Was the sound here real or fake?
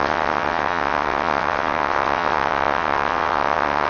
fake